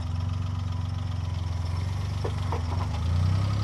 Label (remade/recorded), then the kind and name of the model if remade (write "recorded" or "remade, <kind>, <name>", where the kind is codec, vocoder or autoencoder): recorded